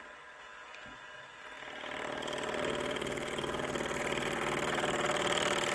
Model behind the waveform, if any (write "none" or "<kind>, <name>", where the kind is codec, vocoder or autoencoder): none